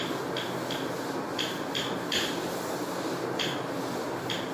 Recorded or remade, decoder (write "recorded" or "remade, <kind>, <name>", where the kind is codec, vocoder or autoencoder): recorded